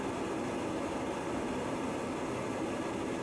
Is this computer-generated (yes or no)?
no